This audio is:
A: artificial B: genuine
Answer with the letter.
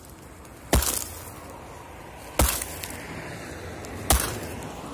B